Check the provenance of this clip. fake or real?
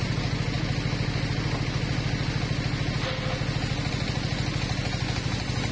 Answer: real